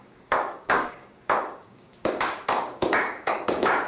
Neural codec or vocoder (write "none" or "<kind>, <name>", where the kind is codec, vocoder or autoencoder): codec, DAC